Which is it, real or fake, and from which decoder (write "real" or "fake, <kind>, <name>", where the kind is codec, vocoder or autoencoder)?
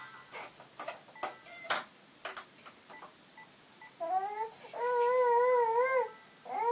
real